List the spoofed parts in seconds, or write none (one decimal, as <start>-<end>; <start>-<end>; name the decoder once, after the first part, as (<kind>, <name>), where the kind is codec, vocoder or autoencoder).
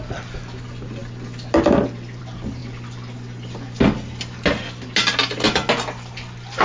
none